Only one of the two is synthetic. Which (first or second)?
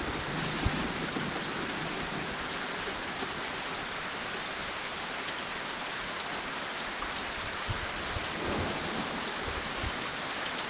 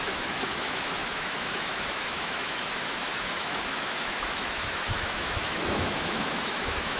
second